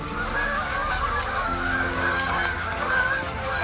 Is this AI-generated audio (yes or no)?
yes